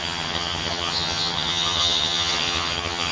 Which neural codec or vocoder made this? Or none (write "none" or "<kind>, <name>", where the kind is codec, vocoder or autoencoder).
vocoder, HiFi-GAN